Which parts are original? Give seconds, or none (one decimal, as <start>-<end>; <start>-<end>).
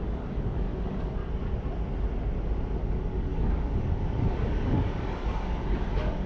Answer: 1.2-2.8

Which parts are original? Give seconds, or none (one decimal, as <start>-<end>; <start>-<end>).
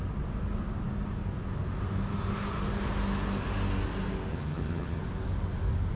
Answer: 0.0-4.3; 5.0-6.0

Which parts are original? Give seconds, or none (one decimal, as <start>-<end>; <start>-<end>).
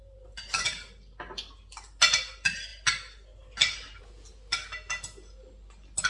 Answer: 0.0-6.1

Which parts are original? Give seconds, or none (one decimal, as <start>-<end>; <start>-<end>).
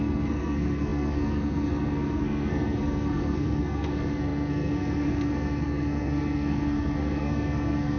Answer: none